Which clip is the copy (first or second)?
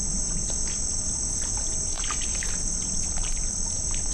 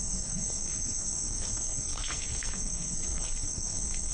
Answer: second